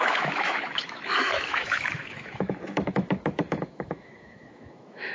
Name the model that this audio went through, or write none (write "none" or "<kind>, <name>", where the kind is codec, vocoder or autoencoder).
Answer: autoencoder, DAC-VAE